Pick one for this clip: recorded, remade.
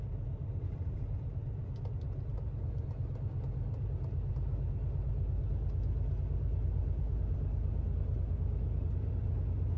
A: recorded